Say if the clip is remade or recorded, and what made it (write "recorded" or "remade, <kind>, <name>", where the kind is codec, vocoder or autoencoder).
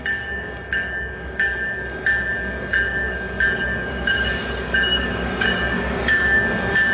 remade, codec, DAC